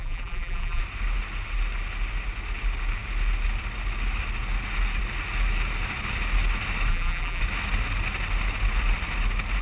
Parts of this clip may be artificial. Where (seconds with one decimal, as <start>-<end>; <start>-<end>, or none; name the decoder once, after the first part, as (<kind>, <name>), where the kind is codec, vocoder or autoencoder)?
0.0-0.8 (vocoder, BigVGAN v2); 6.9-7.4

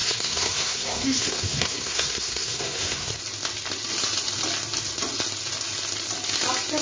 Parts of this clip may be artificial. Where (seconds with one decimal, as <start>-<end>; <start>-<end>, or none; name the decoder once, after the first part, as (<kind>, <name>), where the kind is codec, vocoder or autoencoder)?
0.0-3.2 (codec, SNAC)

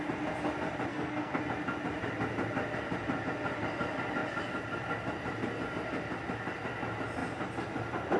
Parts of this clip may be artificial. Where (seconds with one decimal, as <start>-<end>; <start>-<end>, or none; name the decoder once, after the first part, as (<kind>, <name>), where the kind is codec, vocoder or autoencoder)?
0.9-1.4 (codec, SNAC)

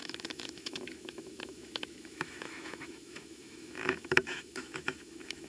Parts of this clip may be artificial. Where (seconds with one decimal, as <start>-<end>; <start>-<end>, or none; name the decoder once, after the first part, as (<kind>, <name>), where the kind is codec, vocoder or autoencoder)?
0.0-5.5 (autoencoder, DAC-VAE)

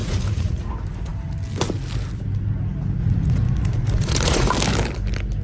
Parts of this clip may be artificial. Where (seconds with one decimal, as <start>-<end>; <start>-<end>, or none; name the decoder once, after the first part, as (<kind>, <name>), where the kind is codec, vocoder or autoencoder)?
0.0-0.7 (vocoder, Vocos); 3.0-4.5

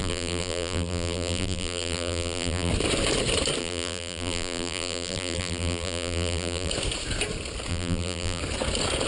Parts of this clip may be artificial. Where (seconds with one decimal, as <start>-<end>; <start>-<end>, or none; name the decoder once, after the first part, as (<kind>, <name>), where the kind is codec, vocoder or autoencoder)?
0.0-2.7 (vocoder, BigVGAN v2); 3.6-6.7; 7.7-8.4